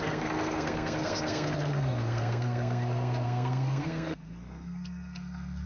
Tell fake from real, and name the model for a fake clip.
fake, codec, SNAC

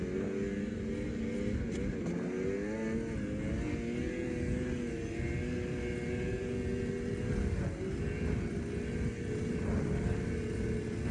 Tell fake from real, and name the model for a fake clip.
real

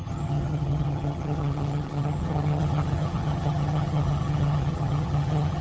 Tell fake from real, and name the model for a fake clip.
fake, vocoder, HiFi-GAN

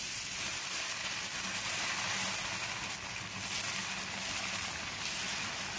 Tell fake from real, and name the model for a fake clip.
real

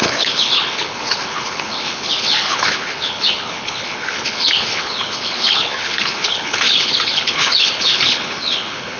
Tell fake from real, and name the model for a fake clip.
fake, codec, HILCodec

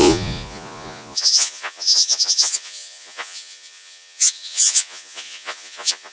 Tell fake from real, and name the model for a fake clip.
fake, vocoder, Vocos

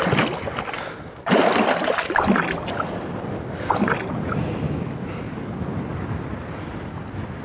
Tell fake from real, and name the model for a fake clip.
real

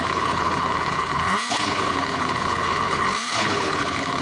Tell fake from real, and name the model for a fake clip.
fake, codec, HILCodec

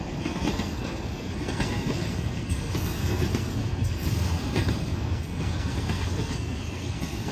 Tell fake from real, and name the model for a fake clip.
fake, codec, SNAC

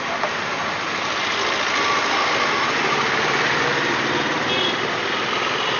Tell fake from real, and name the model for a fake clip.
real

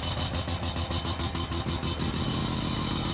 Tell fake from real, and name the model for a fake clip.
real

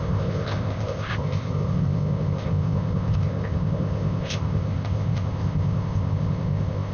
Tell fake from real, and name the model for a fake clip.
fake, codec, ZipCodec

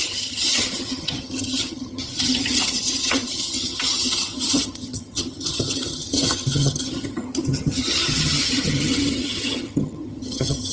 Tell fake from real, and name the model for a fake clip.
fake, vocoder, HiFi-GAN